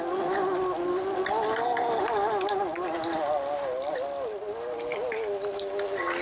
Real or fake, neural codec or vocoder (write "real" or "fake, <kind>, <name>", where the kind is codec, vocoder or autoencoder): real